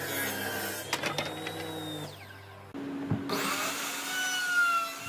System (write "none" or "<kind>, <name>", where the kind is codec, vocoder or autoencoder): none